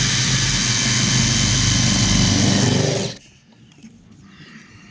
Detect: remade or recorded recorded